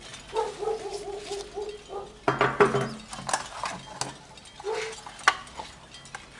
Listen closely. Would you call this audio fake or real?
real